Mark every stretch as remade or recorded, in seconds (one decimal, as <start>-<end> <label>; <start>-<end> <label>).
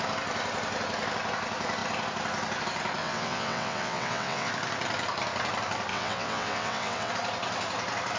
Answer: 0.0-3.0 recorded; 3.0-4.5 remade; 4.5-5.9 recorded; 5.9-7.1 remade; 7.1-8.2 recorded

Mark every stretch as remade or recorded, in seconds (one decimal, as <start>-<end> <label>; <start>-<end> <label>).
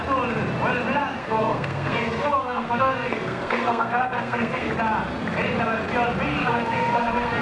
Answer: 0.0-1.2 recorded; 1.2-4.7 remade; 4.7-6.4 recorded; 6.4-7.4 remade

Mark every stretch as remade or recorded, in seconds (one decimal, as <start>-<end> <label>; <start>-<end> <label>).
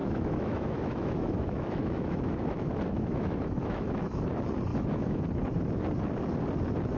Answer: 0.0-4.2 remade; 4.2-4.7 recorded; 4.7-5.2 remade; 5.2-7.0 recorded